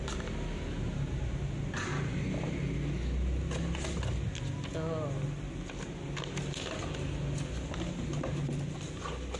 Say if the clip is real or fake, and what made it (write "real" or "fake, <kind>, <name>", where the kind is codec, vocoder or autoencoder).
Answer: real